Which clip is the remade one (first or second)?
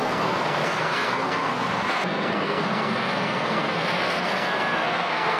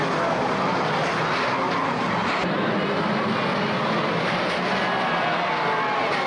first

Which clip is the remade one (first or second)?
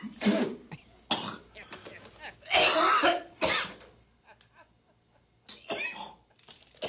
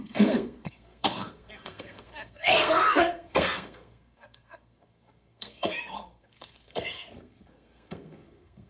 second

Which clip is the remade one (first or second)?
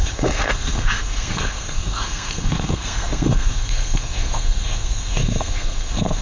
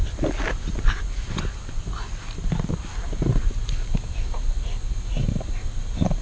first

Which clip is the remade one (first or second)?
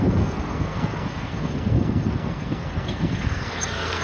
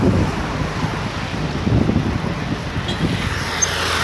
first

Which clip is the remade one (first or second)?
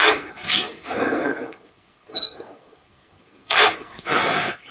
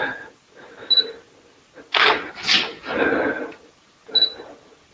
first